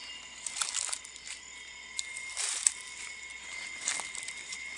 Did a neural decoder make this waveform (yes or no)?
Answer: no